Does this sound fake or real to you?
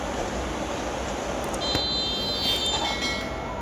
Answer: real